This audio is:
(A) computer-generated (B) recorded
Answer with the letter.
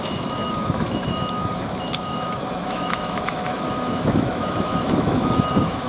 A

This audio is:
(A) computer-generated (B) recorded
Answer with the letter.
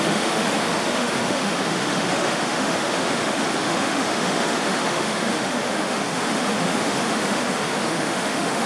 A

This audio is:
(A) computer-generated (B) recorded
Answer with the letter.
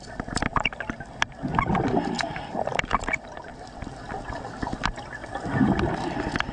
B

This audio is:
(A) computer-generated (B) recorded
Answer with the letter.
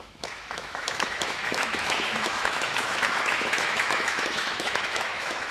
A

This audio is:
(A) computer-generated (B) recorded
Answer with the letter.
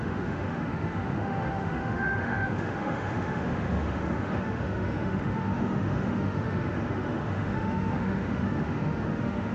A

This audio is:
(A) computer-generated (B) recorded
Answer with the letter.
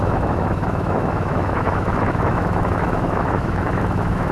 A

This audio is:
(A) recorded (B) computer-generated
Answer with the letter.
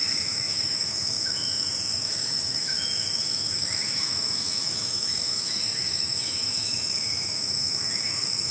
B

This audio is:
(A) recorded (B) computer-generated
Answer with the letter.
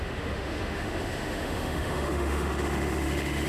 B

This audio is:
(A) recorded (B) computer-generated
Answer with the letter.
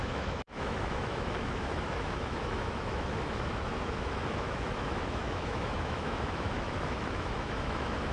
B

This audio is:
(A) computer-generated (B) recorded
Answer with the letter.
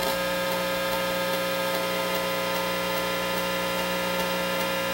A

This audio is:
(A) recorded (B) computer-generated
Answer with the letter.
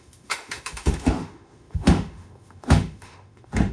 B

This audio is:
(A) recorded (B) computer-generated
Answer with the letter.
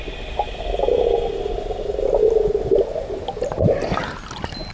A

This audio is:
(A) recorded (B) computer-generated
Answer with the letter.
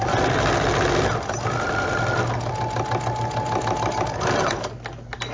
A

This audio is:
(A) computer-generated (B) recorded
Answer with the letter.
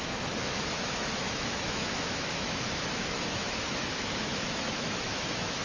A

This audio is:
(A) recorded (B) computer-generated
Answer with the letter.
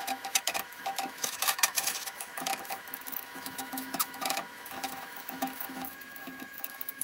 B